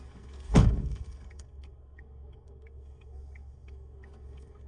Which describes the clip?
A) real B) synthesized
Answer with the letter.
B